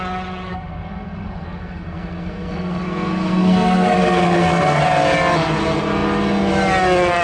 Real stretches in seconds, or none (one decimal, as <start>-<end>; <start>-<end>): 0.0-0.5; 4.8-7.2